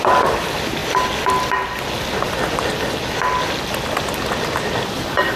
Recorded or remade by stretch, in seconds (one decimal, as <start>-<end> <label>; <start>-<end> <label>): 0.0-5.4 recorded